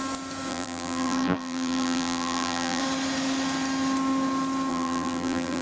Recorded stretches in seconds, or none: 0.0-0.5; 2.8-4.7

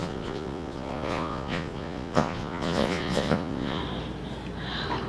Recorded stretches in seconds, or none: 3.8-5.1

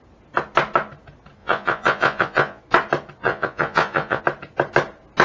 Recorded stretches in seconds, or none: 0.0-1.4; 2.6-3.2; 4.2-5.2

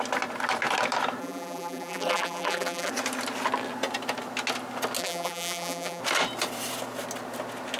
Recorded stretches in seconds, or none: 0.0-1.2; 2.9-5.0; 6.0-7.8

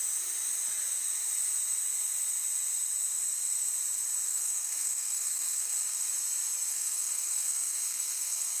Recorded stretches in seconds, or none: 0.0-4.3; 6.1-6.7

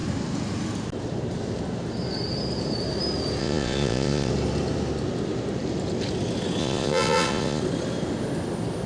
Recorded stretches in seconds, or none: 0.0-3.4; 4.3-6.6; 7.6-8.9